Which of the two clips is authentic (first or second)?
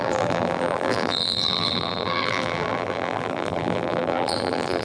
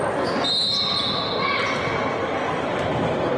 second